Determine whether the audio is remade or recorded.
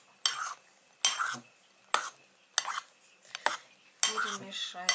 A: recorded